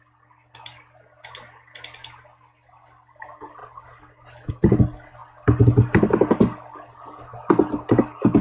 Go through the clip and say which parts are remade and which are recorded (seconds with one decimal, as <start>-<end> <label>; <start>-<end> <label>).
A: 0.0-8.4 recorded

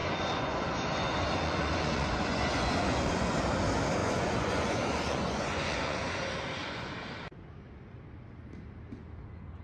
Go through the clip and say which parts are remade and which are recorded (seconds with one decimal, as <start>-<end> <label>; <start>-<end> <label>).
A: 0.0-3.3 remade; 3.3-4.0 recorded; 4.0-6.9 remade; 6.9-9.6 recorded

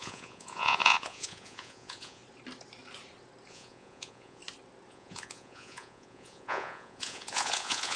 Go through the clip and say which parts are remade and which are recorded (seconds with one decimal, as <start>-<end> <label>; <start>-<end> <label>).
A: 0.0-2.2 remade; 2.2-3.5 recorded; 3.5-4.4 remade; 4.4-4.9 recorded; 4.9-8.0 remade

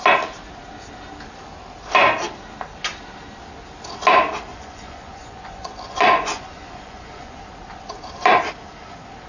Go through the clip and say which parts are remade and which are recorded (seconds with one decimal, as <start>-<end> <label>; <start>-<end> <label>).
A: 0.0-4.5 recorded; 4.5-7.4 remade; 7.4-9.3 recorded

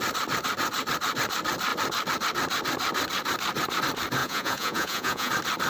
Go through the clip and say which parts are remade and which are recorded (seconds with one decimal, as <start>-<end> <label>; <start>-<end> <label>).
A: 0.0-4.2 recorded; 4.2-5.3 remade; 5.3-5.7 recorded

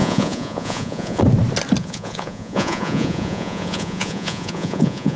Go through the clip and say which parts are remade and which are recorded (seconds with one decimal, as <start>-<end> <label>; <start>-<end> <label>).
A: 0.0-1.2 remade; 1.2-1.8 recorded; 1.8-5.2 remade

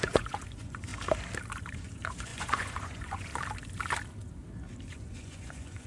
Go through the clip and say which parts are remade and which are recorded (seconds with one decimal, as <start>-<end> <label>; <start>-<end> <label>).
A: 0.0-0.9 remade; 0.9-1.7 recorded; 1.7-3.3 remade; 3.3-4.9 recorded; 4.9-5.9 remade